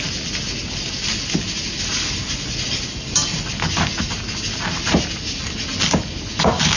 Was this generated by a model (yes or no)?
no